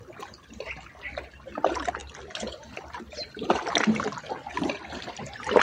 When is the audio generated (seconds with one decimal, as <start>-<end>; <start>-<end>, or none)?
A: none